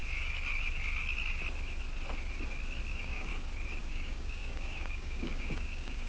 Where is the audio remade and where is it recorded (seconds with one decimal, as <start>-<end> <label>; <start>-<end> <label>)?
0.0-2.9 recorded; 2.9-3.3 remade; 3.3-3.8 recorded; 3.8-6.1 remade